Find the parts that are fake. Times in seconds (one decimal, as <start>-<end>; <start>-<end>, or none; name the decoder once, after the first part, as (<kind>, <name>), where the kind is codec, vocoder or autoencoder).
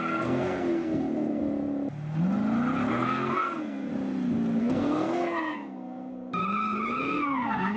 0.0-1.4 (codec, SNAC); 2.9-3.9; 4.6-6.4; 7.0-7.8